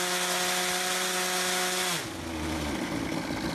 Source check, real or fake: real